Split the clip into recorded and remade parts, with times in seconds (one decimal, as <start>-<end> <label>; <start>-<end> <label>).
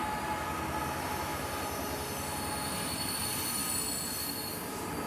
0.0-1.3 recorded; 1.3-3.2 remade; 3.2-5.1 recorded